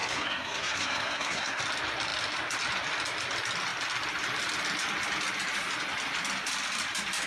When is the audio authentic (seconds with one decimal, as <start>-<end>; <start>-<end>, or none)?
1.6-7.3